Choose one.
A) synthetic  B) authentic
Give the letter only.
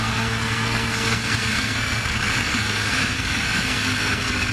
A